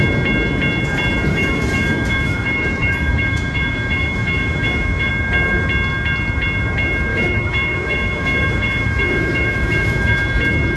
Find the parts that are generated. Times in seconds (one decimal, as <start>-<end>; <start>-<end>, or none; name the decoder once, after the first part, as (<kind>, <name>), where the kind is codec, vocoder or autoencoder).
1.3-5.1 (autoencoder, DAC-VAE); 7.1-10.2